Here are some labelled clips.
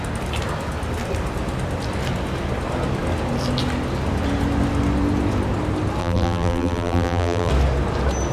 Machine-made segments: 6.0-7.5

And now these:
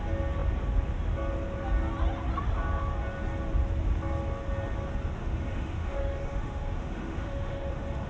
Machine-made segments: 5.2-8.1

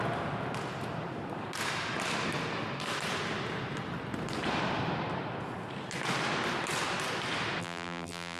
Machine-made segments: 7.6-8.4

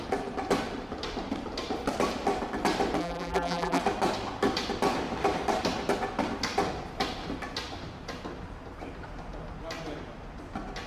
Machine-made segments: 3.0-3.8

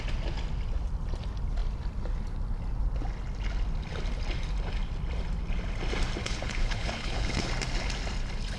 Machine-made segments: 6.2-7.5

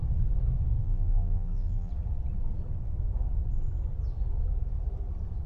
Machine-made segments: 0.8-1.9